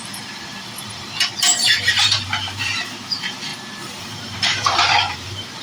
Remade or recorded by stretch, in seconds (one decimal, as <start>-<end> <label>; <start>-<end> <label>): 0.0-3.5 remade; 3.5-4.0 recorded; 4.0-5.6 remade